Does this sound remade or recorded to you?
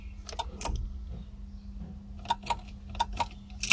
recorded